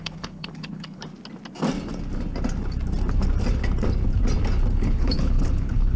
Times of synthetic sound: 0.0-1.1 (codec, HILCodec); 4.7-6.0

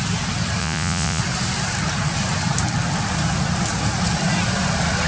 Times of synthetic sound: 0.6-1.2 (vocoder, Vocos)

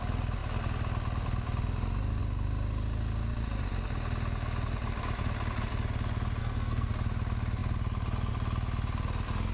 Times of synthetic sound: 6.4-6.9 (codec, SNAC)

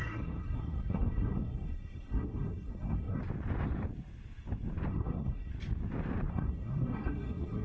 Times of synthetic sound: 0.0-3.2 (codec, SNAC); 4.9-5.5; 6.3-7.6

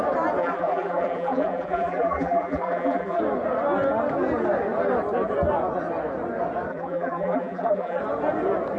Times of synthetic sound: 0.4-3.2 (vocoder, BigVGAN v2); 6.7-8.0

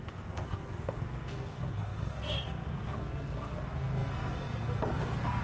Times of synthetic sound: 0.0-5.4 (codec, SNAC)

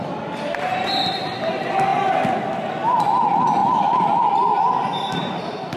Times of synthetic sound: none

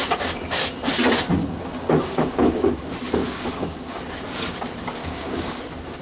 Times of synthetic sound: 1.4-2.7 (codec, DAC); 3.2-4.0; 5.0-5.6